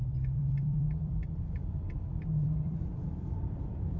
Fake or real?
fake